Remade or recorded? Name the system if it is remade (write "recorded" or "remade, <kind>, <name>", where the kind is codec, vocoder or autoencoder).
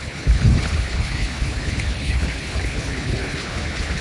remade, codec, HILCodec